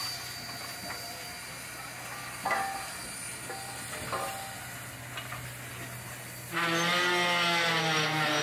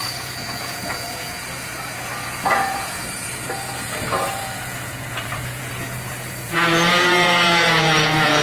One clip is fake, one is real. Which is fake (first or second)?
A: second